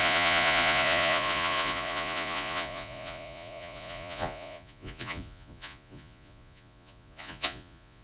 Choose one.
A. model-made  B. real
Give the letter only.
A